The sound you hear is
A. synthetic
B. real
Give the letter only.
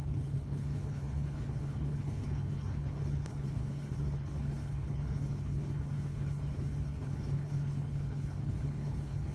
A